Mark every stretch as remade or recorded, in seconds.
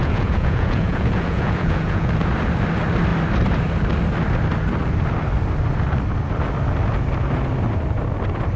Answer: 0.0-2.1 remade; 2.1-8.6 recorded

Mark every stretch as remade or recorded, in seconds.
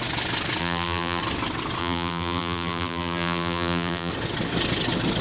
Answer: 0.0-0.6 recorded; 0.6-1.2 remade; 1.2-1.8 recorded; 1.8-4.1 remade; 4.1-5.2 recorded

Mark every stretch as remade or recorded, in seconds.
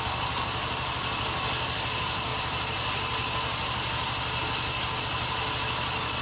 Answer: 0.0-6.2 recorded